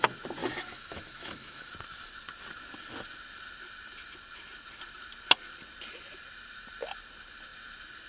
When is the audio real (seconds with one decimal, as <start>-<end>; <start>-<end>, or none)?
0.0-0.4; 1.7-8.1

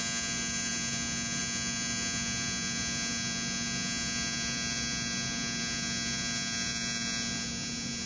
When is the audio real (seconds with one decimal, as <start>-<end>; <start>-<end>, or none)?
0.0-8.1

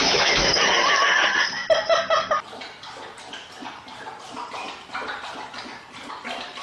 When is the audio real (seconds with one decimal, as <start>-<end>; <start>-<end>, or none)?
0.5-6.6

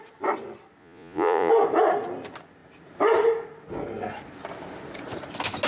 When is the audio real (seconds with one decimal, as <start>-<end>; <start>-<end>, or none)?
0.0-0.8; 1.5-5.7

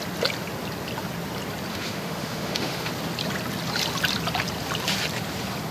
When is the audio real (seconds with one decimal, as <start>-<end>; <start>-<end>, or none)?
0.0-1.7; 2.9-5.7

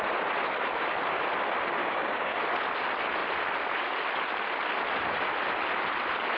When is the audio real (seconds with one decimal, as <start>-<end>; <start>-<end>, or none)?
0.0-1.8; 2.4-6.4

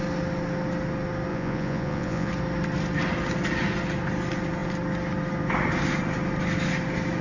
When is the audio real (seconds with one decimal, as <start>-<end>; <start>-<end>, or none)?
0.0-1.3; 2.3-7.2